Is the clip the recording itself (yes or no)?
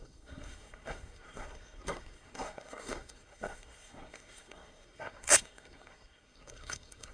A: no